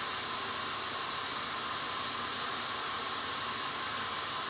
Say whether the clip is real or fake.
real